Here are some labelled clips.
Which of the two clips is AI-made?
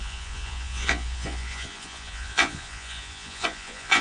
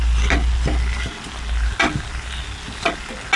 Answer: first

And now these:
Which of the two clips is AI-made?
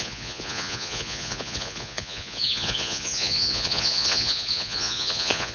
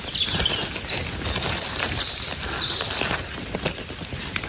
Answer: first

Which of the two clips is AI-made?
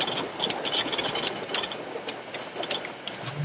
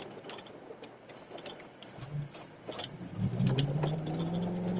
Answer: second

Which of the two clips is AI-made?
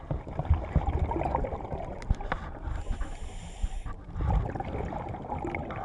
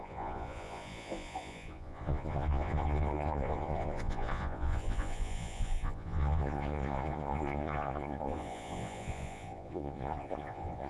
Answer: second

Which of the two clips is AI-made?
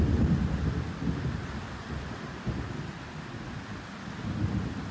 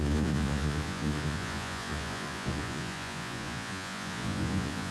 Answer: second